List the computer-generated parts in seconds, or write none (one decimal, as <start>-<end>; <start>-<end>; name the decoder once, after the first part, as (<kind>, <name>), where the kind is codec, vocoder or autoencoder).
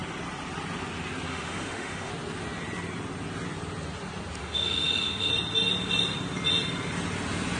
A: 1.3-2.1 (autoencoder, DAC-VAE); 4.4-5.3